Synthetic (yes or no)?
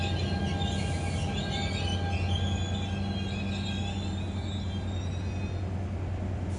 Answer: no